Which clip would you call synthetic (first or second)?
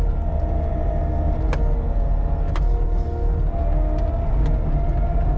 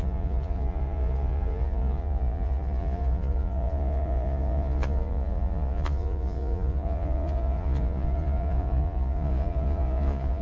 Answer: second